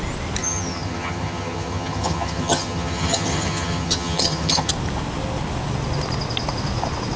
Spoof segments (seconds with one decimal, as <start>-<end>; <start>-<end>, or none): 0.4-4.7